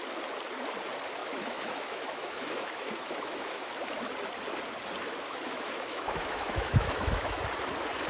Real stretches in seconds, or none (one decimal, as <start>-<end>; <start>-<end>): 0.0-1.2; 3.8-5.1; 7.4-8.1